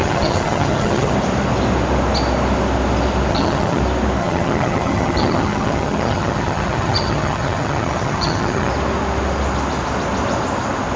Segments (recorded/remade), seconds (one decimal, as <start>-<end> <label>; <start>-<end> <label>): 0.0-1.1 remade; 1.1-3.3 recorded; 3.3-3.8 remade; 3.8-4.2 recorded; 4.2-8.7 remade; 8.7-11.0 recorded

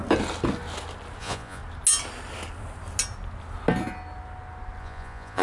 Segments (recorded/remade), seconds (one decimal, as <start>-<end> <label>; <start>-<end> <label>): 0.0-1.2 recorded; 1.2-1.6 remade; 1.6-4.8 recorded; 4.8-5.4 remade

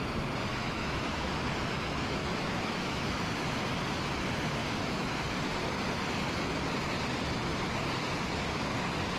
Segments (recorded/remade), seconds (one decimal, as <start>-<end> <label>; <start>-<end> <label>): 0.0-0.5 recorded; 0.5-1.3 remade; 1.3-2.2 recorded; 2.2-3.2 remade; 3.2-4.6 recorded; 4.6-5.2 remade; 5.2-9.2 recorded

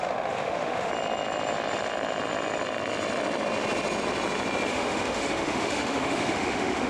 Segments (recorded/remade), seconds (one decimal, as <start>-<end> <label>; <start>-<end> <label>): 0.0-0.9 remade; 0.9-4.7 recorded; 4.7-6.9 remade